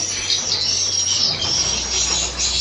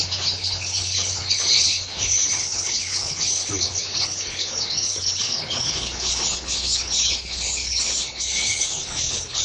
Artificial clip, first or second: second